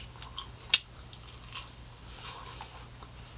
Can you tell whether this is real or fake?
real